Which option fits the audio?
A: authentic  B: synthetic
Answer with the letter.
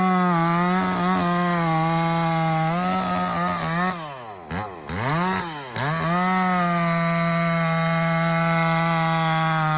A